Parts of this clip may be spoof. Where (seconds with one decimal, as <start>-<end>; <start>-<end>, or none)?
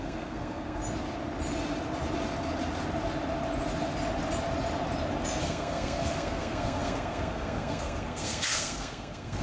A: 0.0-0.8; 5.4-9.4